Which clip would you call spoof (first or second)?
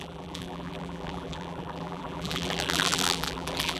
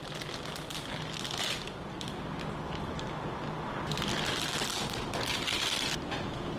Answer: first